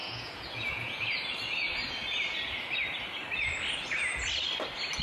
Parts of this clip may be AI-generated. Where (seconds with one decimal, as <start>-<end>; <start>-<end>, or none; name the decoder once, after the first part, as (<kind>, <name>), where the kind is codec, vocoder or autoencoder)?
0.0-1.2 (vocoder, Vocos)